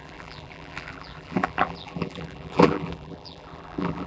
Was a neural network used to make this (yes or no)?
yes